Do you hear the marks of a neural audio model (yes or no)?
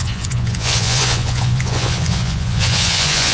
yes